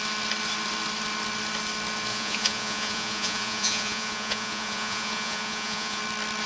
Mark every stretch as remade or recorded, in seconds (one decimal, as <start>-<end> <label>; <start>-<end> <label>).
0.0-2.1 recorded; 2.1-6.0 remade; 6.0-6.5 recorded